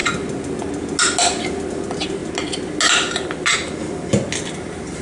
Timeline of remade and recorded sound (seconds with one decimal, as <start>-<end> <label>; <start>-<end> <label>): 0.0-5.0 recorded

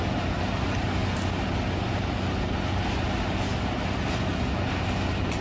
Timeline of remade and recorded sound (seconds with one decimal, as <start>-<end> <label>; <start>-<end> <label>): 0.0-5.4 recorded